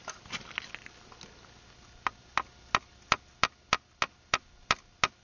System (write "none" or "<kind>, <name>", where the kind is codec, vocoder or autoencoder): none